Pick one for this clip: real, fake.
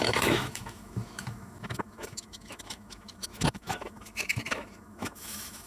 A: fake